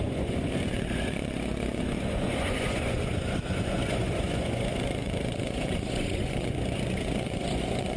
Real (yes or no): no